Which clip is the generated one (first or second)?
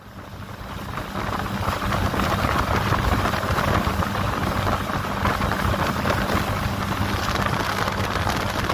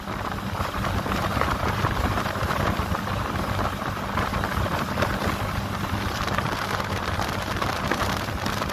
second